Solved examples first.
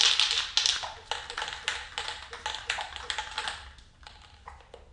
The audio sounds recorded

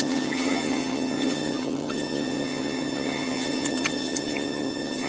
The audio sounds remade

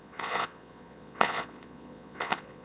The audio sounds remade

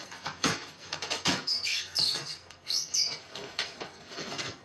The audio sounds remade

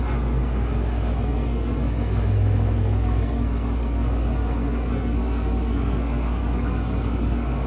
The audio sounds remade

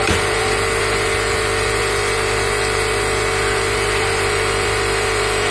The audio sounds remade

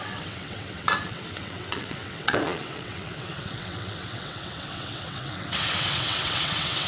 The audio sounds remade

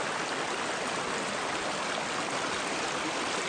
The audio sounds recorded